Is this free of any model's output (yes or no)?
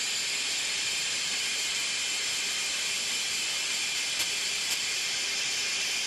no